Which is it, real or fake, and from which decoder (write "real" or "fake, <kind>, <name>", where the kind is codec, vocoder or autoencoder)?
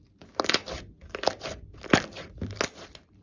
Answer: real